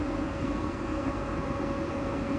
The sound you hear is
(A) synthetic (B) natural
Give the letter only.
A